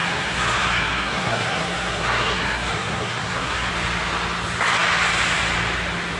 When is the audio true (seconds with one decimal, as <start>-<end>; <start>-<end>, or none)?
3.7-6.2